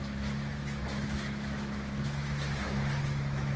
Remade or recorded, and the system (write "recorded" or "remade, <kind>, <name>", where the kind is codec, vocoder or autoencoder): remade, autoencoder, DAC-VAE